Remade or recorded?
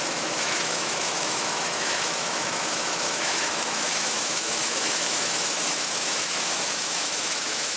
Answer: remade